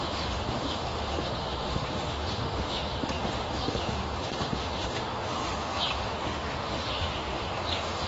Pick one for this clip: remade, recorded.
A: remade